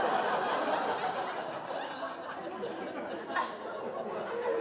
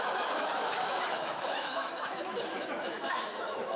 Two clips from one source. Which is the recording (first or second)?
first